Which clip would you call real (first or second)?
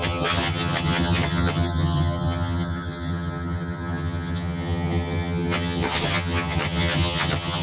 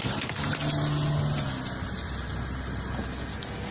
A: second